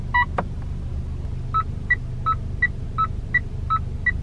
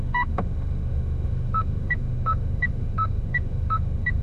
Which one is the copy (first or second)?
second